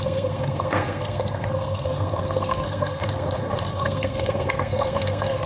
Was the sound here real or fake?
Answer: fake